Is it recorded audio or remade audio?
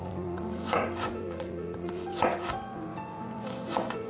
remade